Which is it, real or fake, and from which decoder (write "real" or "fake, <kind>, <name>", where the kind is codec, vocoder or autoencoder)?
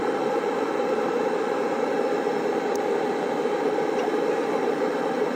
fake, vocoder, BigVGAN v2